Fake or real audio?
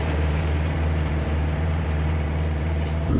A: fake